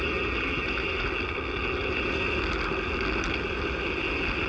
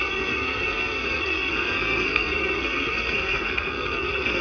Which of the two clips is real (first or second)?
first